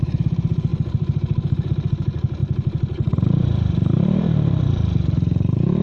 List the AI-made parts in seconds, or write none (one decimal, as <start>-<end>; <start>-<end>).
0.0-5.8